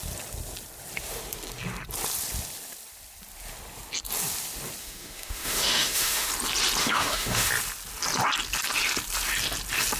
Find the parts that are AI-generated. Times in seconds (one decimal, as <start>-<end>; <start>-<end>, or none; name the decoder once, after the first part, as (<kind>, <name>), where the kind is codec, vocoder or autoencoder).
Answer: 4.8-6.3 (autoencoder, DAC-VAE); 6.8-7.5